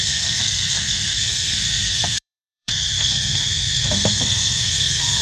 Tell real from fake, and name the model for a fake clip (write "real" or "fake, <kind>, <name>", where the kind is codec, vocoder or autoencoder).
fake, codec, SNAC